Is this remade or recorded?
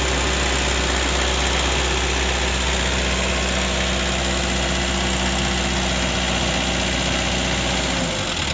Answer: recorded